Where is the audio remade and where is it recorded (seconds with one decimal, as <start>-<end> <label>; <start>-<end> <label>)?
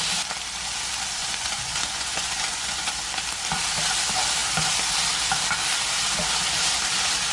0.0-1.2 recorded; 1.2-2.9 remade; 2.9-7.3 recorded